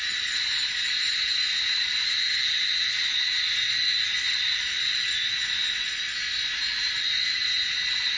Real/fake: real